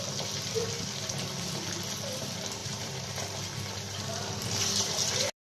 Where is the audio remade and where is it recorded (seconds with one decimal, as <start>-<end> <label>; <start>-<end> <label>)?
0.0-2.6 recorded; 2.6-5.1 remade; 5.1-5.5 recorded